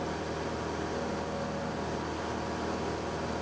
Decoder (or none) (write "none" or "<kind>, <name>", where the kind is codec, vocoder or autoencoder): none